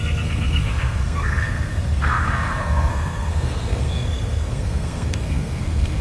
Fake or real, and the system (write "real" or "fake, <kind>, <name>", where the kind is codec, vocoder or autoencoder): fake, codec, SNAC